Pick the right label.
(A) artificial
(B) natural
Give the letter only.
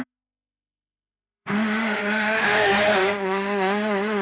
A